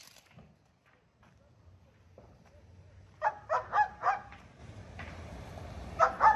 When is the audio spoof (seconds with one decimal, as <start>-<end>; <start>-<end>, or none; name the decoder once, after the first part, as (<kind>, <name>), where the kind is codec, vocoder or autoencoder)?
4.6-6.0 (vocoder, BigVGAN v2)